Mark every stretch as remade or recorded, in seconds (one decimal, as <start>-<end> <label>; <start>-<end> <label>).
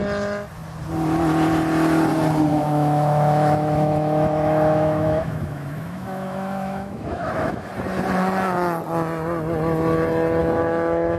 0.0-2.5 recorded; 2.5-7.7 remade; 7.7-10.4 recorded; 10.4-11.2 remade